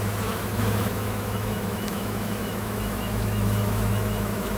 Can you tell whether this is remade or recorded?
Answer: remade